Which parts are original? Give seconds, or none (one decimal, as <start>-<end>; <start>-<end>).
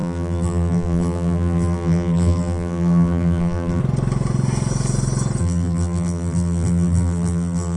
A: 3.8-5.4